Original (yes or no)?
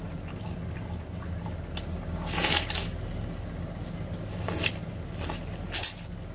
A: yes